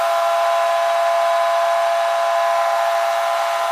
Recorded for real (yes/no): yes